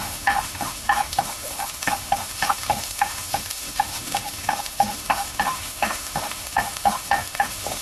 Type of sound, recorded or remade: remade